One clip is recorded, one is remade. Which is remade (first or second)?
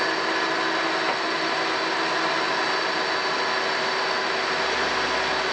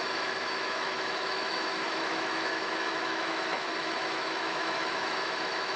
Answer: second